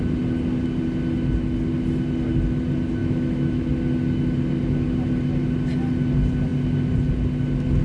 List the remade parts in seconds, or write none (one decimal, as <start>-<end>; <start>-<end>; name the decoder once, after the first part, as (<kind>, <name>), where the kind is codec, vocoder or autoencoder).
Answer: 3.0-3.7 (autoencoder, DAC-VAE)